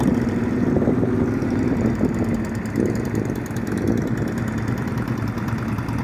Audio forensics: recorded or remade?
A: recorded